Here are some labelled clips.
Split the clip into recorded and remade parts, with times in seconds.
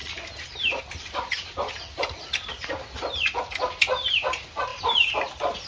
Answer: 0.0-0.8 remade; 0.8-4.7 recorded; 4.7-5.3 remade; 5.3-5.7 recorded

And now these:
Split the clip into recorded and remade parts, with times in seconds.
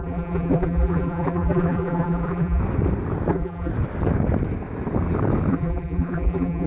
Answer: 0.0-2.6 remade; 2.6-3.3 recorded; 3.3-3.7 remade; 3.7-5.5 recorded; 5.5-6.7 remade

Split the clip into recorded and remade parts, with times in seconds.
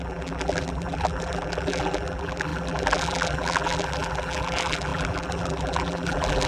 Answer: 0.0-6.5 remade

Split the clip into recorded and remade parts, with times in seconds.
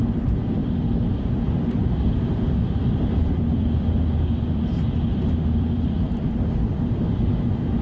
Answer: 0.0-7.8 remade